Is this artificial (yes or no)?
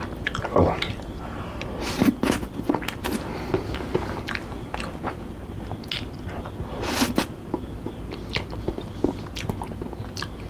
no